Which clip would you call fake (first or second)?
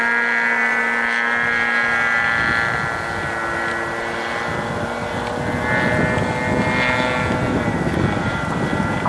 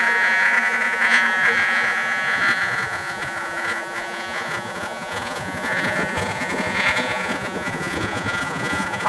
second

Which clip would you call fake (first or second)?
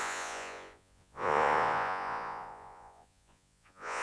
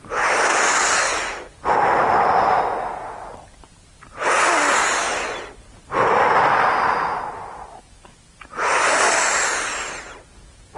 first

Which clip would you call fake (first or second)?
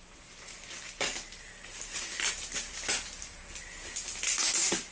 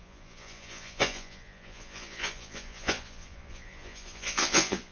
second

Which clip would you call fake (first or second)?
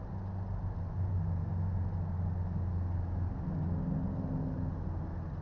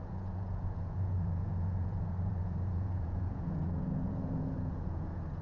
second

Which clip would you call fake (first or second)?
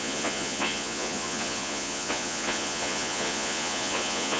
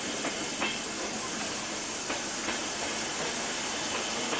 first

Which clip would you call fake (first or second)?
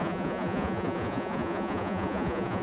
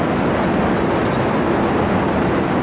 first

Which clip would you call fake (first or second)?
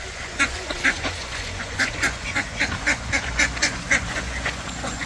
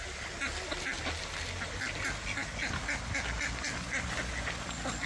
first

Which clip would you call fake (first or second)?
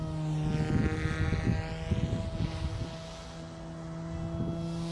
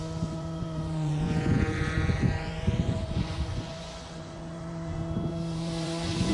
second